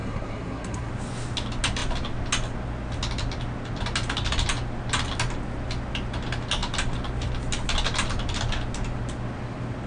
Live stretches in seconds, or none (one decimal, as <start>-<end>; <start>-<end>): 0.9-9.9